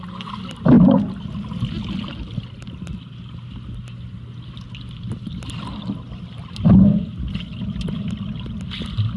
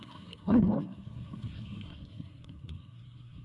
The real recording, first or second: first